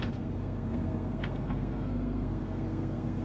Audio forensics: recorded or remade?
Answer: remade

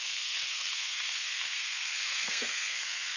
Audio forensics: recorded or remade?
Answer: remade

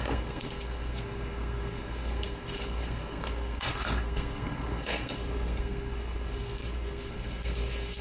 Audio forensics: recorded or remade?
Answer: remade